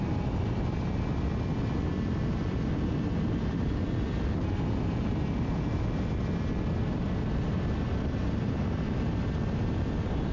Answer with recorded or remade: recorded